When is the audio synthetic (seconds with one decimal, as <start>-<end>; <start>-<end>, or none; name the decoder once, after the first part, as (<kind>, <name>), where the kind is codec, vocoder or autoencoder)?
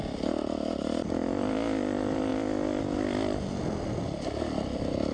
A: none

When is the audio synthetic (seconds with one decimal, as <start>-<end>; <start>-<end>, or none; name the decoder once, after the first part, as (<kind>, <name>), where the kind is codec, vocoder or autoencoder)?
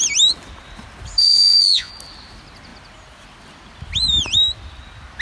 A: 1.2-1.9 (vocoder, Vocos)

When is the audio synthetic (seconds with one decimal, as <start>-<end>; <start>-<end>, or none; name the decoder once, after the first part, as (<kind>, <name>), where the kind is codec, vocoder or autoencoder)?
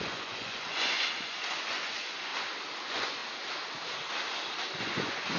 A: 0.0-2.3 (vocoder, Vocos); 2.8-3.2; 4.8-5.4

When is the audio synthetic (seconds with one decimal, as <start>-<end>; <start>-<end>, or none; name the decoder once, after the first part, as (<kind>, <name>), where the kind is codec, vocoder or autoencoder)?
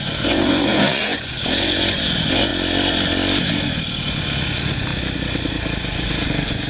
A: 0.0-2.5 (vocoder, Vocos); 3.4-4.9; 5.8-6.7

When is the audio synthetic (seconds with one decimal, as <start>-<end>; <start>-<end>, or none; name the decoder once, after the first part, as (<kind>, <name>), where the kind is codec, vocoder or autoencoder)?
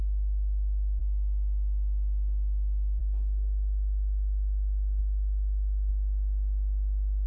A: none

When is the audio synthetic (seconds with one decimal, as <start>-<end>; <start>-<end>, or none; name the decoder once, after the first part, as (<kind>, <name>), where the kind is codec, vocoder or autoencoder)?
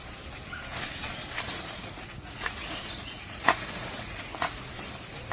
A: 1.5-4.7 (vocoder, Vocos)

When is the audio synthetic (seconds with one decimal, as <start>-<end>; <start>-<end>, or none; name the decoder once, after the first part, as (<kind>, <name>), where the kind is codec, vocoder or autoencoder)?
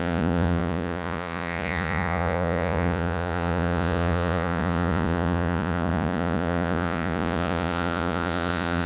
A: 0.0-8.9 (vocoder, Vocos)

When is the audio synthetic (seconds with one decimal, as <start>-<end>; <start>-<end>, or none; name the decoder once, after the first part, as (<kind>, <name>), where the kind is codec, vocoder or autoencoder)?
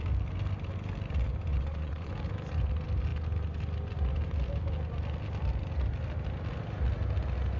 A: 1.5-2.1 (vocoder, Vocos)